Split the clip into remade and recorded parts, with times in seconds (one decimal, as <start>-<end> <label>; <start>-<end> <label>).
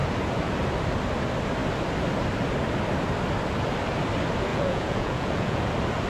0.0-4.5 recorded; 4.5-5.6 remade; 5.6-6.1 recorded